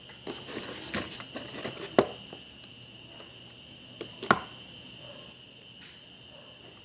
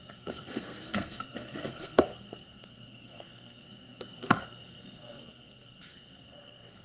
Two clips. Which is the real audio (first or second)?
first